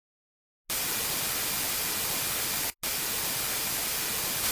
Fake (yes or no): no